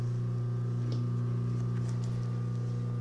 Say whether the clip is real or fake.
real